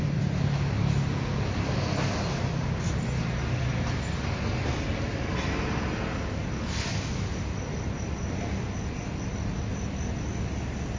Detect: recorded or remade recorded